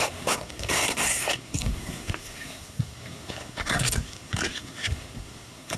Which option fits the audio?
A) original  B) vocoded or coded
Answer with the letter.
B